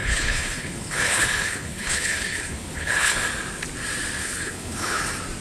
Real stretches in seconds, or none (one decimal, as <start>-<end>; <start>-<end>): 3.2-4.2; 5.0-5.4